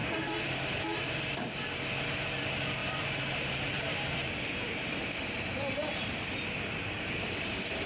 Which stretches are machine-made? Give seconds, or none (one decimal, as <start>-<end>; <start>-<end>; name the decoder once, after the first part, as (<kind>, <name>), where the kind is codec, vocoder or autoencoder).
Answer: 0.0-1.5 (vocoder, BigVGAN v2); 2.8-7.5